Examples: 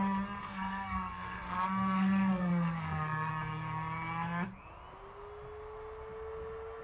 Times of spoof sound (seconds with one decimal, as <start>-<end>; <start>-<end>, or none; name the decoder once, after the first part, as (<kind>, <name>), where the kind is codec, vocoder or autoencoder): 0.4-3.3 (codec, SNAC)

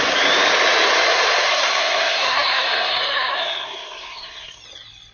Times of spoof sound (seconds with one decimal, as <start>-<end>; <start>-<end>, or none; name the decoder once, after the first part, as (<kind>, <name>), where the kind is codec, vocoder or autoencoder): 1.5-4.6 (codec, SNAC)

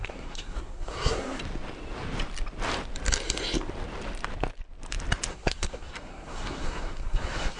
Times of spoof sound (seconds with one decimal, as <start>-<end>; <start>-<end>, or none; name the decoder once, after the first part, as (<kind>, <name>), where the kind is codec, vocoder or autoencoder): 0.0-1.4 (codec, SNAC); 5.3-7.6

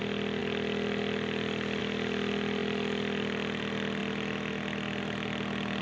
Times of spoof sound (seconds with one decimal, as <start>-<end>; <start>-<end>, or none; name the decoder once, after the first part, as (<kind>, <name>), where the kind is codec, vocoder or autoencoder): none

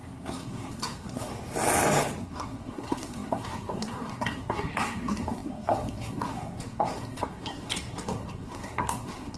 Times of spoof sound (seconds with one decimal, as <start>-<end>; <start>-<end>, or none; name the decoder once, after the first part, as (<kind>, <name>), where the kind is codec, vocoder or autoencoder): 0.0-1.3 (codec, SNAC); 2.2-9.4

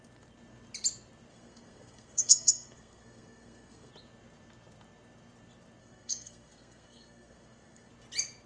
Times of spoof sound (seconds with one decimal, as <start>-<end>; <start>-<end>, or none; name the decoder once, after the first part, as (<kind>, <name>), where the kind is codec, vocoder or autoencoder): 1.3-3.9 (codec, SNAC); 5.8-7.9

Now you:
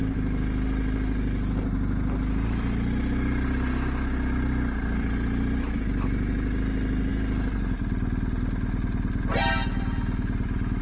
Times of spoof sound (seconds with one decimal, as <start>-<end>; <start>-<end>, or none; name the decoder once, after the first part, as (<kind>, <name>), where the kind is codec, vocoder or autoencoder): none